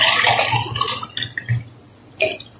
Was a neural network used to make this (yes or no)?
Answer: no